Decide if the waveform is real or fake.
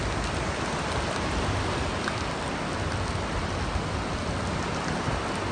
real